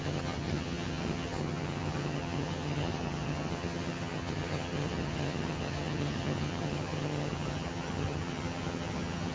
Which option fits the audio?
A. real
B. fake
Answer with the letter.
B